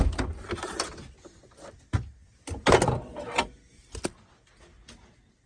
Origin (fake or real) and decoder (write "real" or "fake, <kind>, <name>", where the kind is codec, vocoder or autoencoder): real